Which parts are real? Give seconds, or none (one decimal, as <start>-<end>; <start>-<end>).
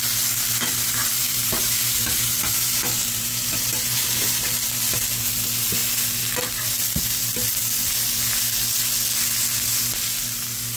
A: 0.0-1.2; 4.6-10.8